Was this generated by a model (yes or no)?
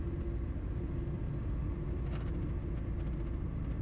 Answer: no